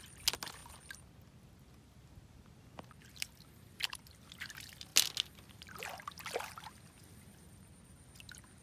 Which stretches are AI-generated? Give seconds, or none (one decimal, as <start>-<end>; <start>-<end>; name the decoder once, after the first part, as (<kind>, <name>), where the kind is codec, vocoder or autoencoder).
none